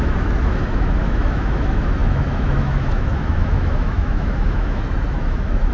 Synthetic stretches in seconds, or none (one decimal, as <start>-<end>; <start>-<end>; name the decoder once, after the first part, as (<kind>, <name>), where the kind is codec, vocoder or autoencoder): 0.0-5.7 (autoencoder, DAC-VAE)